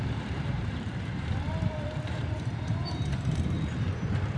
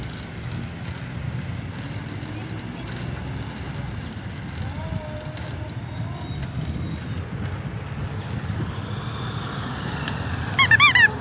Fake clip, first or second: first